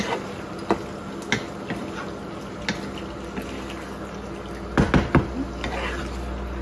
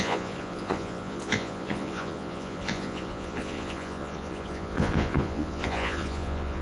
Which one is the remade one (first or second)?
second